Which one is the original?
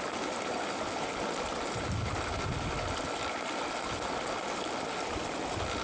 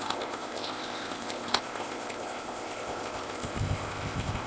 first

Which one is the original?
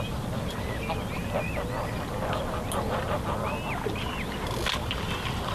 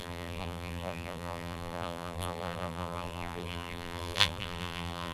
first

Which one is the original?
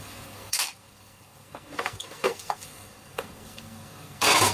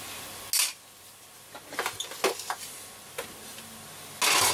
second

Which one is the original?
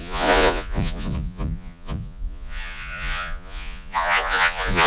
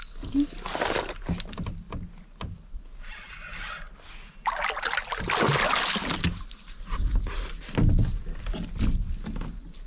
second